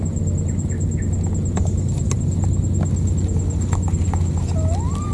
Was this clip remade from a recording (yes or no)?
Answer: no